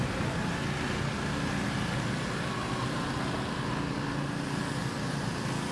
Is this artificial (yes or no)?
no